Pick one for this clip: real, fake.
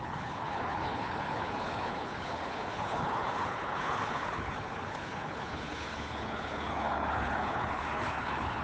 fake